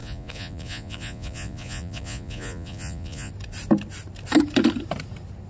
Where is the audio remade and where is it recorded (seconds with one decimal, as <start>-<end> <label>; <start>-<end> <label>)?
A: 0.0-3.3 remade; 3.3-5.5 recorded